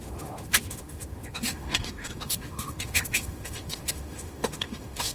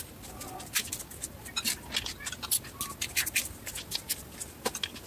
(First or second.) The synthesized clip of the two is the first